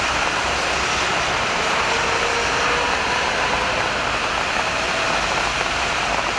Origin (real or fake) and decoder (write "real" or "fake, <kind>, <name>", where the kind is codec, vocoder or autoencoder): real